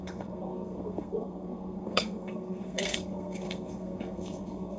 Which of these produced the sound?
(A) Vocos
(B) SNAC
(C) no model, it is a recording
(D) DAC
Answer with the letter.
B